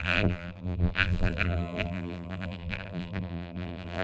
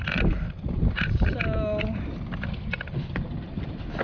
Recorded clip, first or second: second